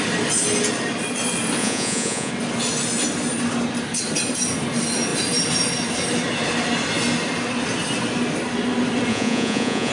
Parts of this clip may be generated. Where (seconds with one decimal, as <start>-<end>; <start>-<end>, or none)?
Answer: 1.6-2.3; 9.1-9.9